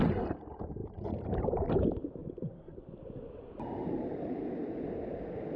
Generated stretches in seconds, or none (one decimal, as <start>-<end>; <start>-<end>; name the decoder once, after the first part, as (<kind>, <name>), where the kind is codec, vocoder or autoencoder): 0.8-1.7 (vocoder, BigVGAN v2); 3.8-4.7